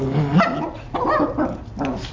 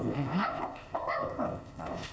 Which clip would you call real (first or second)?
first